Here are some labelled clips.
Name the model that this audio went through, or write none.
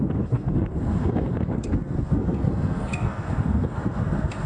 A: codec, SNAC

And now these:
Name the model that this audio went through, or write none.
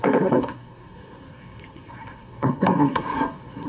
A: codec, SNAC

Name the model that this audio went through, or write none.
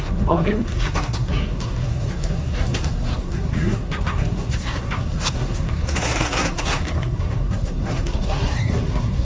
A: codec, SNAC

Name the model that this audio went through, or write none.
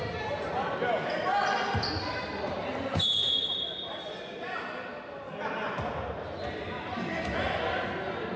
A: none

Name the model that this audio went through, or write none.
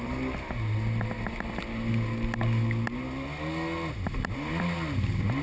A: none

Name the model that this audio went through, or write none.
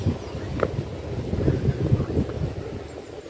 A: none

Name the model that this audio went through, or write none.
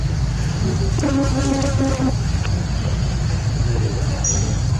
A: none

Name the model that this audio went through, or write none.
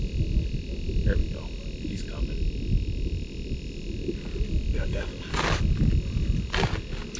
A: none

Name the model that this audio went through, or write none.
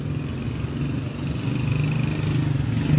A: none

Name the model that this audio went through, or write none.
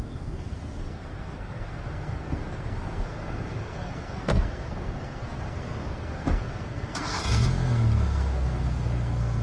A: codec, SNAC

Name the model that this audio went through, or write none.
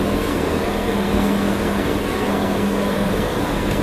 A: codec, SNAC